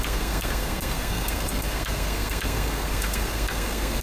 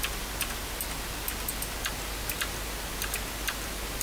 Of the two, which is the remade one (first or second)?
first